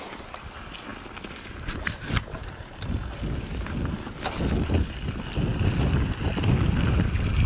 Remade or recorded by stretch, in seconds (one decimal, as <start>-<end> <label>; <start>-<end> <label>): 0.0-7.5 recorded